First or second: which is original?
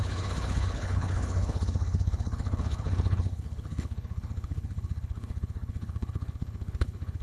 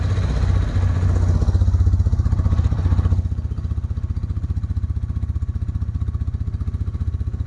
second